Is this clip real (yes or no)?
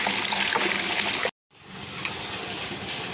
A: yes